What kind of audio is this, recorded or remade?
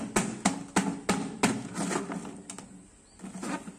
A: recorded